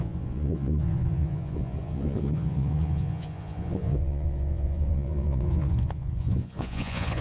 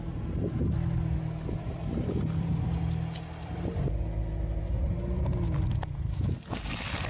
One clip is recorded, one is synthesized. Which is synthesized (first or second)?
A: first